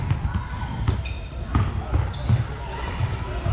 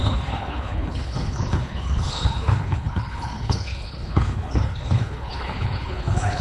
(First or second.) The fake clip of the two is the second